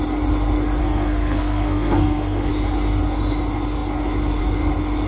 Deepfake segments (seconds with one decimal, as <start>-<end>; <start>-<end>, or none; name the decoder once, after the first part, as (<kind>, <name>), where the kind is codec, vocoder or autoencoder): 0.8-2.5 (codec, SNAC)